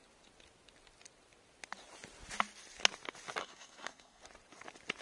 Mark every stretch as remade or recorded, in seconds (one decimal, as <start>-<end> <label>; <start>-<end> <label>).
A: 0.0-3.4 recorded; 3.4-4.2 remade; 4.2-5.0 recorded